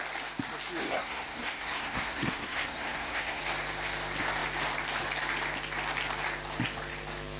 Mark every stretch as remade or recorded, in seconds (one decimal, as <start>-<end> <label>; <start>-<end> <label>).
0.0-0.8 recorded; 0.8-3.4 remade; 3.4-7.4 recorded